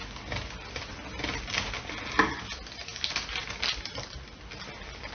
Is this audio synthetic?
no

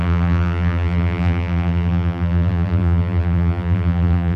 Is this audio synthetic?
yes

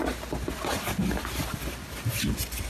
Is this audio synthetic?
no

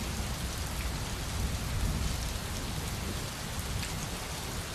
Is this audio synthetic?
no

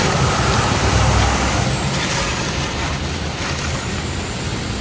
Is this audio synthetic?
yes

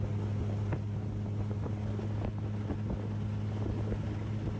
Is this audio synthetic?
no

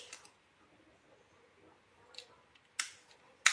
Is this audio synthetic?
no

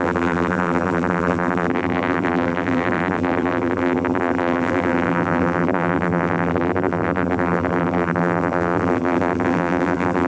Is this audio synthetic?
yes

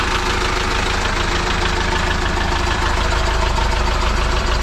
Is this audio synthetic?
yes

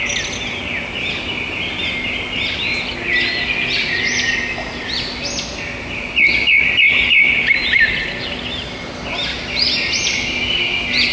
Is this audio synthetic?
no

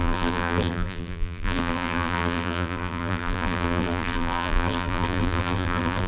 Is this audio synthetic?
yes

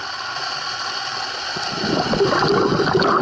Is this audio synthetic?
no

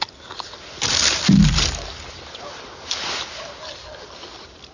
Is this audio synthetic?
no